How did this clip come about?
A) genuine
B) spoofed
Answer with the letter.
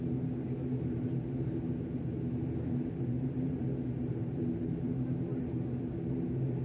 B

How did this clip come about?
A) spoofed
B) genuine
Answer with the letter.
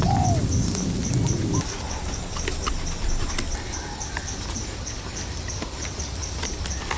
B